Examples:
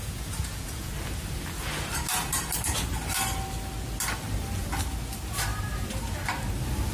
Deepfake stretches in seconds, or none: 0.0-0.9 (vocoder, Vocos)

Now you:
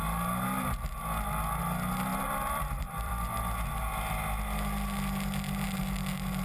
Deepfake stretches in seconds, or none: 2.1-3.1 (vocoder, BigVGAN v2)

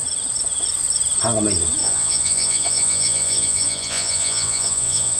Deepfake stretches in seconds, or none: 1.8-5.2 (vocoder, Vocos)

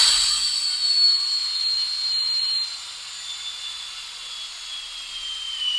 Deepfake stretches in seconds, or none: none

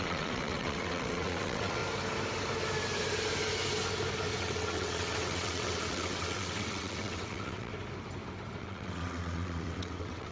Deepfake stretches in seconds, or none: 0.0-1.8 (vocoder, WaveNeXt); 4.4-7.7; 8.6-10.3

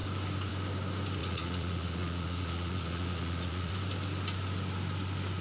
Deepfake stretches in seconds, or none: 1.2-3.7 (vocoder, Vocos)

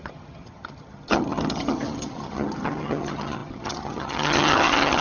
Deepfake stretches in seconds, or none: 0.0-5.0 (vocoder, HiFi-GAN)

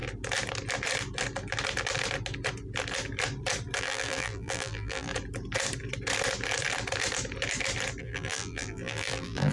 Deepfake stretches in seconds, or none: 3.8-5.1 (vocoder, BigVGAN v2); 8.0-9.5